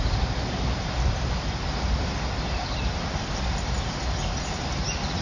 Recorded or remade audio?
recorded